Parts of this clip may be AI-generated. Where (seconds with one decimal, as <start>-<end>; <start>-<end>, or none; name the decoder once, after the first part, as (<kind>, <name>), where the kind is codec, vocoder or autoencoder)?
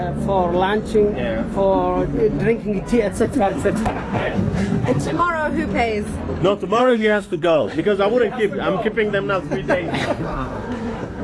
3.1-5.2 (codec, SNAC); 6.8-7.8; 10.2-11.2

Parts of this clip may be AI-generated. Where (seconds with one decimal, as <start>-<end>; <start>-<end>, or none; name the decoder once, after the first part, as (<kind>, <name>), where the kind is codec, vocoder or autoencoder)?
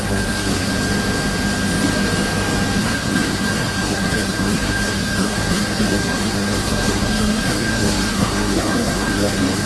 0.0-0.7 (codec, SNAC); 2.8-9.7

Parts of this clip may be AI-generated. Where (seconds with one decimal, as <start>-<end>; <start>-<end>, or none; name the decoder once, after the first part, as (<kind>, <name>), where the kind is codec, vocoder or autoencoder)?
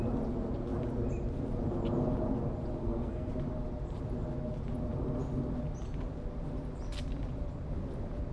2.8-3.3 (codec, SNAC)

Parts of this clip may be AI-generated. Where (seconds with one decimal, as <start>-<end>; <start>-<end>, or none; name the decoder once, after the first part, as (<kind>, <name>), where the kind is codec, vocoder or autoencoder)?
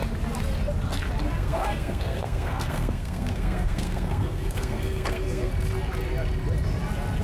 1.2-5.5 (codec, SNAC)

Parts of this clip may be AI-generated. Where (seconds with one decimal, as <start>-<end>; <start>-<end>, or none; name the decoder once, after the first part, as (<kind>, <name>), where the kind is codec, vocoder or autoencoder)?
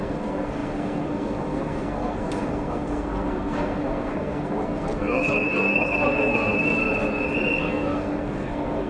0.0-6.8 (codec, SNAC); 7.6-8.9